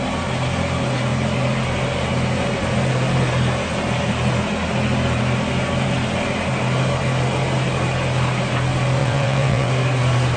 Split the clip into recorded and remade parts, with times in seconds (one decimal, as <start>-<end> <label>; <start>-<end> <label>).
0.0-9.0 recorded; 9.0-9.7 remade; 9.7-10.4 recorded